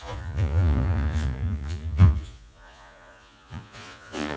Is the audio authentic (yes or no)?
no